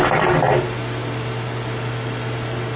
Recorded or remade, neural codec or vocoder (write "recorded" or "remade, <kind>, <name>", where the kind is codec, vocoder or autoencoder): recorded